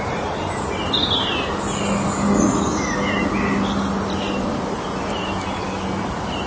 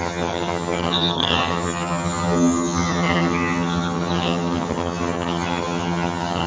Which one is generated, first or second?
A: second